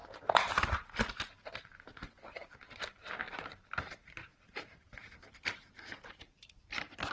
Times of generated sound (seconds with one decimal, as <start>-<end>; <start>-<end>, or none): 0.0-0.9; 4.3-7.1